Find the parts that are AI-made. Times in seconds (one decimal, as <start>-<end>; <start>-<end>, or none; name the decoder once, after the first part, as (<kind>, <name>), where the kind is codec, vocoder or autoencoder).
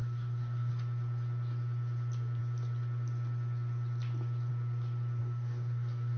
0.0-0.7 (codec, DAC); 5.2-6.2